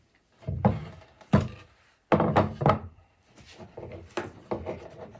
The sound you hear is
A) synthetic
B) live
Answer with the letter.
B